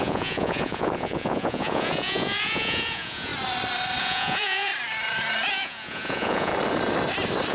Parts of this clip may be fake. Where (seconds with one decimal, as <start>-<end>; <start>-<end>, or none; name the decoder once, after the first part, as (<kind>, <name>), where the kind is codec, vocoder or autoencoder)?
0.0-3.3 (vocoder, Vocos); 4.0-4.7; 5.5-6.5